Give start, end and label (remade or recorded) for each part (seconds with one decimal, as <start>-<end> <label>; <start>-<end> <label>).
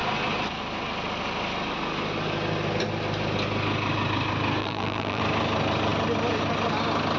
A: 0.0-4.6 recorded; 4.6-5.2 remade; 5.2-7.2 recorded